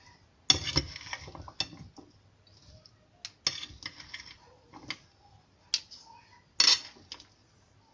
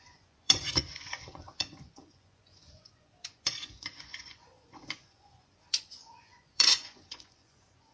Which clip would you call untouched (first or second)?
first